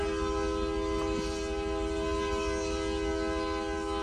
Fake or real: real